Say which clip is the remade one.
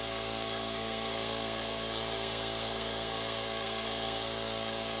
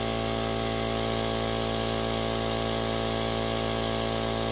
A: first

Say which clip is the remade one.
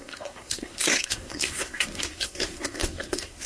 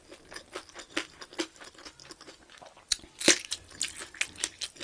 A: first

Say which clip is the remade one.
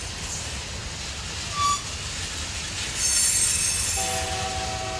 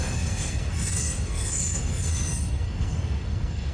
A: second